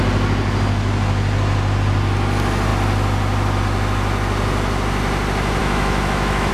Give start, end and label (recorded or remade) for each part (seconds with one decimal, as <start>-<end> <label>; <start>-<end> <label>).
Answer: 0.0-5.6 recorded; 5.6-6.5 remade